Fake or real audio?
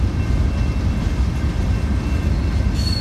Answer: real